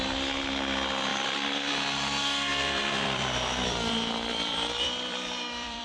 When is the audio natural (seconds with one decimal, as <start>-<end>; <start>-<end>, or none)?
0.0-1.1; 1.7-2.5; 3.9-4.3